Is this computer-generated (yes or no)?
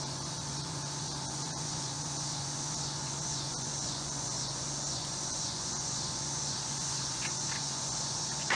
yes